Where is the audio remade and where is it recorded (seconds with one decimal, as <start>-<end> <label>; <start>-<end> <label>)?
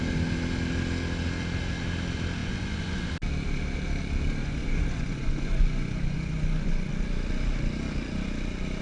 0.0-2.4 recorded; 2.4-3.1 remade; 3.1-4.4 recorded; 4.4-6.9 remade; 6.9-8.8 recorded